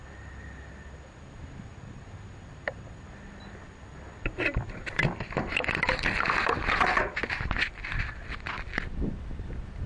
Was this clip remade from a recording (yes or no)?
yes